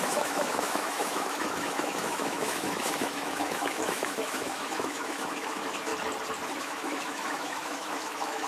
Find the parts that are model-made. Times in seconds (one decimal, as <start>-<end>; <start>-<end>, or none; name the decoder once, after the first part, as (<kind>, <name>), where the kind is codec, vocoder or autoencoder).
0.0-5.9 (autoencoder, DAC-VAE); 6.6-8.5